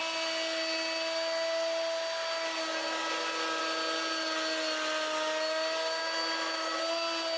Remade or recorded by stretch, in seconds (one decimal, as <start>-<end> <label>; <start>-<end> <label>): 0.0-6.0 recorded; 6.0-6.8 remade; 6.8-7.4 recorded

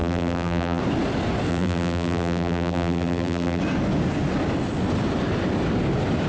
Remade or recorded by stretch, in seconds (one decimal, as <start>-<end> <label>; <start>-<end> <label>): 0.0-0.8 remade; 0.8-1.5 recorded; 1.5-3.6 remade; 3.6-6.3 recorded

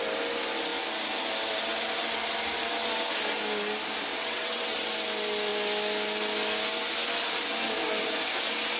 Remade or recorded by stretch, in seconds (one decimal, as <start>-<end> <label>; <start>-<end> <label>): 0.0-4.1 recorded; 4.1-4.9 remade; 4.9-8.8 recorded